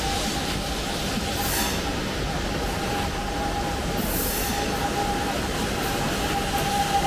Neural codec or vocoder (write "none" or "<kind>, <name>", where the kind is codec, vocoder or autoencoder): none